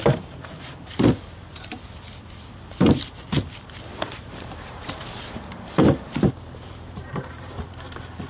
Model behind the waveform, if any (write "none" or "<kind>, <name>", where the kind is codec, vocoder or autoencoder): vocoder, BigVGAN v2